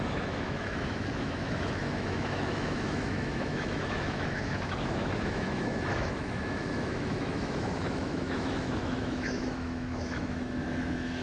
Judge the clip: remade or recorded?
remade